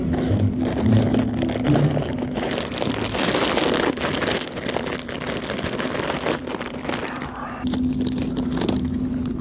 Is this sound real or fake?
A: real